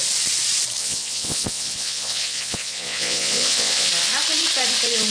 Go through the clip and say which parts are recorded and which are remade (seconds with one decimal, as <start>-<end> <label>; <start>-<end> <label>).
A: 0.0-0.8 recorded; 0.8-3.9 remade; 3.9-5.1 recorded